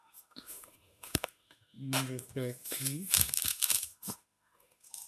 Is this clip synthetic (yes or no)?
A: yes